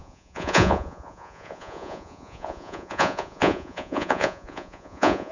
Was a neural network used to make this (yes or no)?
yes